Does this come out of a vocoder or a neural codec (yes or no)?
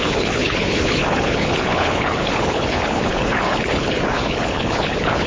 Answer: yes